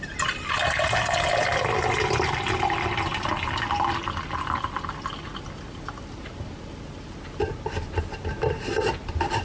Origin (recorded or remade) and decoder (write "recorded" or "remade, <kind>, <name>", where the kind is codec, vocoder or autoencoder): recorded